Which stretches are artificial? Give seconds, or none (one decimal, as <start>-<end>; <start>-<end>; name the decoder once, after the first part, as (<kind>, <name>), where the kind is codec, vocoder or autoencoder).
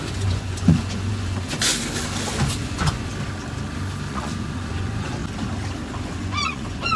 0.0-1.7 (vocoder, Vocos); 2.6-3.1; 4.1-5.2; 6.0-7.0